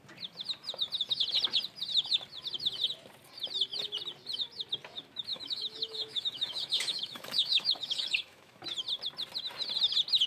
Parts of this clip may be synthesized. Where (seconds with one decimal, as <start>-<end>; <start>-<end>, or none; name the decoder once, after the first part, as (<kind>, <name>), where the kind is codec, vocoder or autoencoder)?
5.3-8.6 (autoencoder, DAC-VAE)